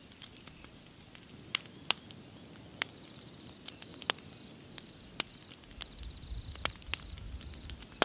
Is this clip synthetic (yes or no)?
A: no